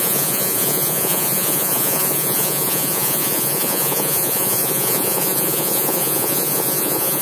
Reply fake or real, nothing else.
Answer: fake